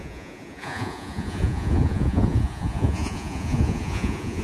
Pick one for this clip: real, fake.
fake